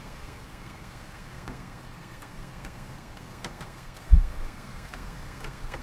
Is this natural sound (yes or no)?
no